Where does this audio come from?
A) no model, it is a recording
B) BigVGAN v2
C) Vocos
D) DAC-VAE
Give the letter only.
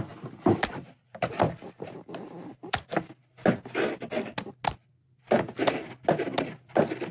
A